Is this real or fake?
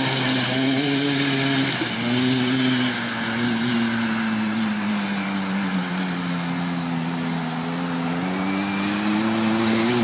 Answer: real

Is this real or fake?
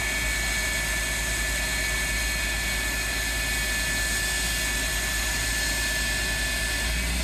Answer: real